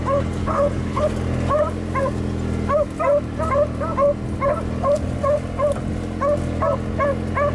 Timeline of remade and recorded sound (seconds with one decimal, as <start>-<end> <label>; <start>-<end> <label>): 0.0-0.4 recorded; 0.4-1.0 remade; 1.0-7.5 recorded